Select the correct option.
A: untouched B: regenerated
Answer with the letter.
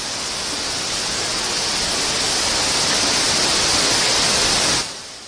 A